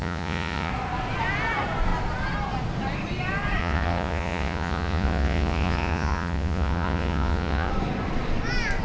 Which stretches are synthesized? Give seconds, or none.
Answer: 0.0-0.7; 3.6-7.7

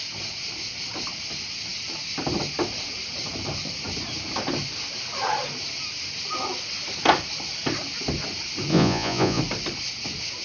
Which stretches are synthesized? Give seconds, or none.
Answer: 8.7-9.4

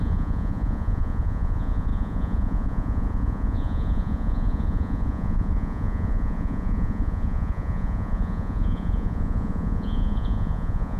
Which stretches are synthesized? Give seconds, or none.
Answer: 0.0-11.0